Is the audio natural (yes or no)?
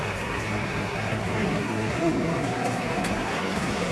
no